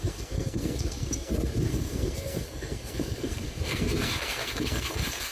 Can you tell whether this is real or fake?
fake